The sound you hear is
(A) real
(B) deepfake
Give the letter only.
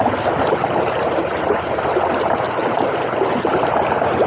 A